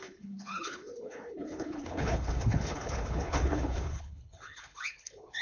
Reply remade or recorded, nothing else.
remade